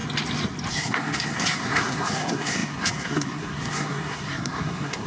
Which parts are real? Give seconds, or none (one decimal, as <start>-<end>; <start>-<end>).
0.0-0.7